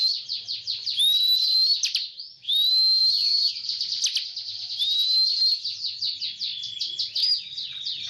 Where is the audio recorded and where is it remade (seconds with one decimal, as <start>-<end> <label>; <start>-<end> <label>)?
0.0-2.0 remade; 2.0-3.0 recorded; 3.0-4.0 remade; 4.0-8.1 recorded